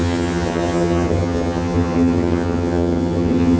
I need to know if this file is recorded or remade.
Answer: remade